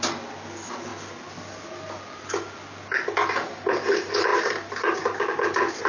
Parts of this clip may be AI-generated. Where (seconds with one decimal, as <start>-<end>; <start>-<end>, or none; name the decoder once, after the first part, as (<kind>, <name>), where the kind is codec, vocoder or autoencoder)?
4.3-5.2 (vocoder, BigVGAN v2)